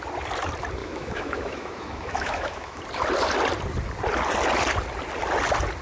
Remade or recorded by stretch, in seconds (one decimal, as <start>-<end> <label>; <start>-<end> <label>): 0.0-0.8 recorded; 0.8-2.8 remade; 2.8-5.8 recorded